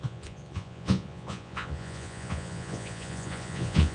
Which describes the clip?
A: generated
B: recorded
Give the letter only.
A